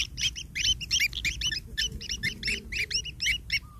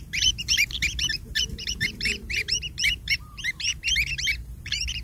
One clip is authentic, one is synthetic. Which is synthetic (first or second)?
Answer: second